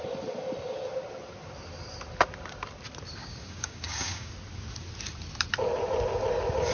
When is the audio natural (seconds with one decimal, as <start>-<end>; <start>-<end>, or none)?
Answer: 0.0-3.2; 4.3-6.7

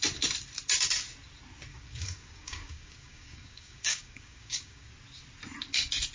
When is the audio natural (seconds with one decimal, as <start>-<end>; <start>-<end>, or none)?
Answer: 0.0-1.7; 4.9-6.1

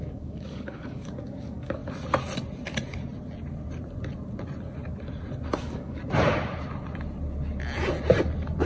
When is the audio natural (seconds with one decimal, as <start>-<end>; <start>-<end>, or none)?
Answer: 1.8-5.6; 6.0-8.7

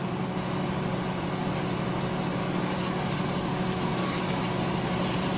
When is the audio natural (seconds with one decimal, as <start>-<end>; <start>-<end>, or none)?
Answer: 0.0-2.4; 4.4-5.4